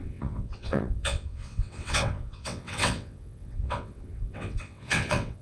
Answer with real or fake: fake